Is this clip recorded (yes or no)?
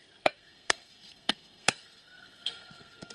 no